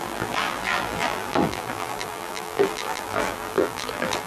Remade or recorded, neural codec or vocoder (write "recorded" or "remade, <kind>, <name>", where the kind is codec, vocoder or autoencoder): remade, vocoder, BigVGAN v2